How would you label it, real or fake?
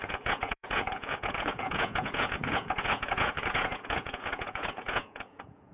fake